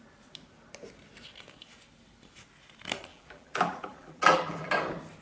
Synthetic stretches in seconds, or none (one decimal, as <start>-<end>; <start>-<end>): 3.1-4.7